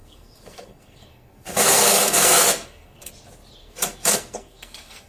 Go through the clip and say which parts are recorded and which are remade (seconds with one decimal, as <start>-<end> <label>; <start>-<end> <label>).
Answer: 0.0-3.1 remade; 3.1-3.6 recorded; 3.6-5.1 remade